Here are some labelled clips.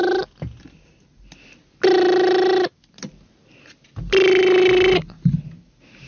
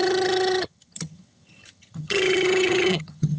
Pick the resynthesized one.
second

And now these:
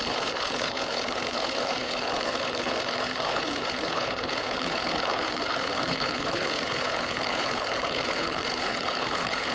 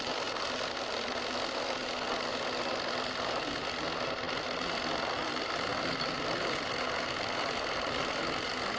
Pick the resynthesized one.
first